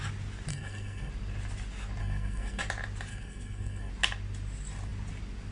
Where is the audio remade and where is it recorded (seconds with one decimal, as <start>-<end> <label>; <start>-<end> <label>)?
0.0-0.5 recorded; 0.5-1.1 remade; 1.1-2.0 recorded; 2.0-2.6 remade; 2.6-3.1 recorded; 3.1-3.9 remade; 3.9-5.5 recorded